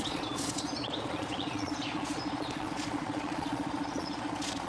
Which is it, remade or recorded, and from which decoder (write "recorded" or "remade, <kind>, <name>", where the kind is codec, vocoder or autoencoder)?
remade, vocoder, Vocos